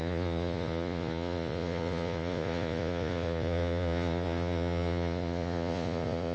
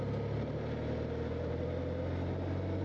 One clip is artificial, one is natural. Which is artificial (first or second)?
first